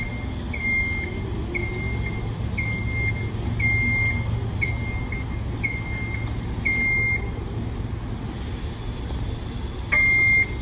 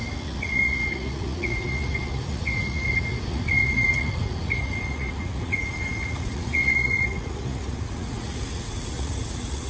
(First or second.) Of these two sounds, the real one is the first